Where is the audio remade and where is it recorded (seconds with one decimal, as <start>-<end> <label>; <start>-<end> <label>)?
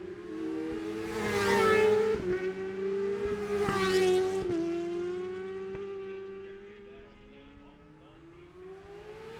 0.0-9.4 recorded